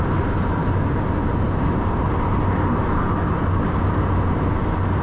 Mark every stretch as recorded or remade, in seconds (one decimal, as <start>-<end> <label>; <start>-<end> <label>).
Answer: 0.0-5.0 recorded